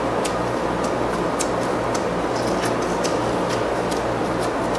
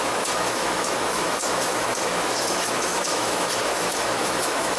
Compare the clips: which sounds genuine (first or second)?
first